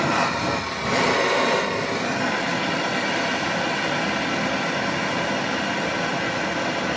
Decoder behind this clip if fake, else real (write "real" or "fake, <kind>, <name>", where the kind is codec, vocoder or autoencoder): real